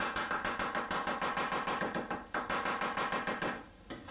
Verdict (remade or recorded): recorded